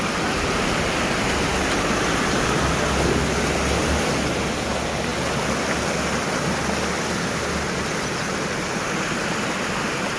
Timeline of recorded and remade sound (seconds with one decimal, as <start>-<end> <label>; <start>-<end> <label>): 0.0-10.2 recorded